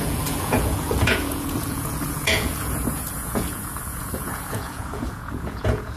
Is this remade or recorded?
remade